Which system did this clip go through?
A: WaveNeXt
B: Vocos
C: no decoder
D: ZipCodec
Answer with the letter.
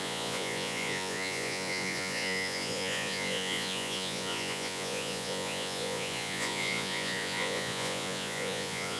B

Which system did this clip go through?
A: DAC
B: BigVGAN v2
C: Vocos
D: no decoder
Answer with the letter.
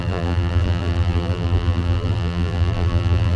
B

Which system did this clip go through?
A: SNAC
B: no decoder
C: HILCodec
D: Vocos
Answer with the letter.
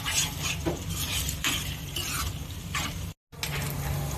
B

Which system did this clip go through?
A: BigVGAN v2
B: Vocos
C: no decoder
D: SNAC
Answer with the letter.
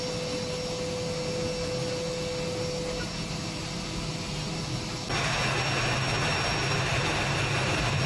C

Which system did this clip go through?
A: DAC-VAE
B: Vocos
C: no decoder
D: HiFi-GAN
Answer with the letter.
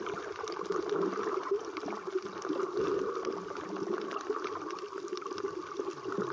C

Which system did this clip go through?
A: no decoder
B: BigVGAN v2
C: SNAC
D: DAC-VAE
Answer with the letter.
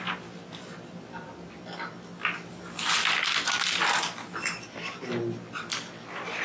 A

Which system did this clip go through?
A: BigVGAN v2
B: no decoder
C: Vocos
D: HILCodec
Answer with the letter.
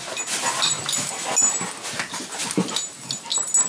B